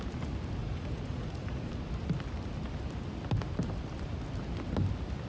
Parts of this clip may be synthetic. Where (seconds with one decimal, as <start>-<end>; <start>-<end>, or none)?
0.6-1.7